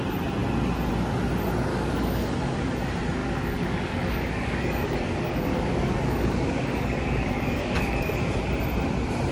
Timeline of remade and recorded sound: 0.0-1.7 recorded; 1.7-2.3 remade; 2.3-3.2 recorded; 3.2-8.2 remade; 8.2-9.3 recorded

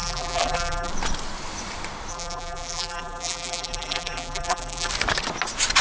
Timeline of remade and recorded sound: 0.0-0.9 remade; 0.9-2.1 recorded; 2.1-4.9 remade; 4.9-5.8 recorded

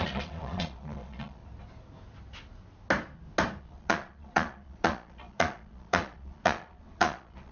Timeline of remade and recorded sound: 0.0-1.4 remade; 1.4-3.6 recorded; 3.6-7.5 remade

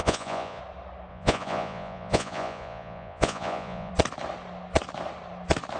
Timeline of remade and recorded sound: 0.0-0.6 remade; 0.6-1.1 recorded; 1.1-3.9 remade; 3.9-5.8 recorded